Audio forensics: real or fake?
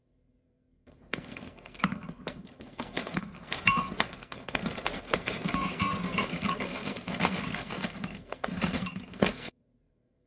fake